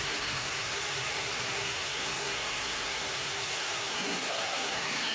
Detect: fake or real fake